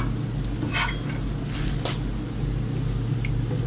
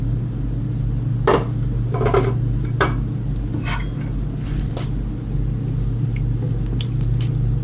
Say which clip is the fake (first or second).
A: second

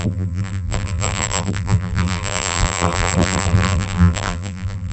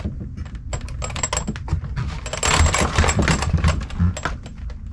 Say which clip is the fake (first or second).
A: first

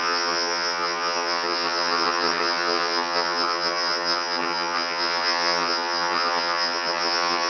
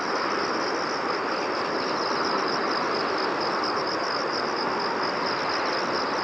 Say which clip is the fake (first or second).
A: first